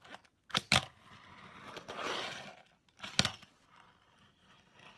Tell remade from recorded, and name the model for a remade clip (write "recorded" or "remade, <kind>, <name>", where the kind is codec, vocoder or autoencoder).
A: recorded